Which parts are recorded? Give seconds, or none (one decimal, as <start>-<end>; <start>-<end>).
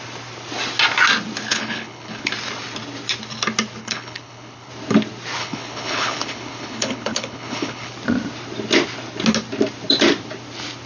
0.0-1.5; 2.3-3.8; 4.7-5.4; 7.9-10.9